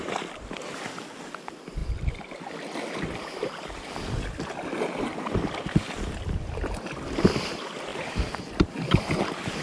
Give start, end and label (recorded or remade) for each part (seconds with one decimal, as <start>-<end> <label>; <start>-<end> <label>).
0.0-9.6 recorded